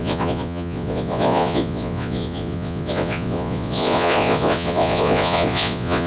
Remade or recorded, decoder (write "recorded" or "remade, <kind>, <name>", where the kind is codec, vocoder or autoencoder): remade, vocoder, Vocos